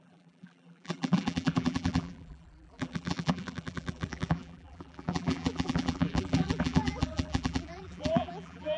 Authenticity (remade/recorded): remade